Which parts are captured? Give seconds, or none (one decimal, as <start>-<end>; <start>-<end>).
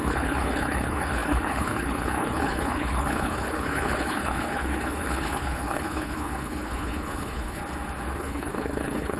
7.6-8.2